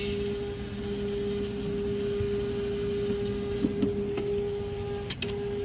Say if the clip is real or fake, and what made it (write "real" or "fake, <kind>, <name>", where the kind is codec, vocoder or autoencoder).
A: real